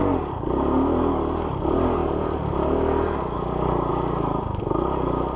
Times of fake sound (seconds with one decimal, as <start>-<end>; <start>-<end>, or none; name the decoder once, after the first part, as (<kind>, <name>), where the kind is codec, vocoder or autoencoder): none